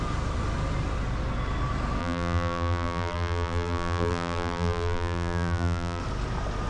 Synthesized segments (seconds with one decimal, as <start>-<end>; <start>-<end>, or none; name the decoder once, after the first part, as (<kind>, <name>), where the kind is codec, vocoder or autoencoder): 2.0-6.0 (vocoder, BigVGAN v2)